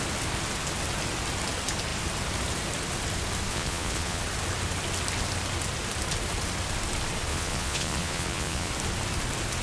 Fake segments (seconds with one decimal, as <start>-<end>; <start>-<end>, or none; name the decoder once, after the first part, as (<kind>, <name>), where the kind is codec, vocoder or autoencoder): 3.5-4.2 (vocoder, Vocos); 7.3-8.7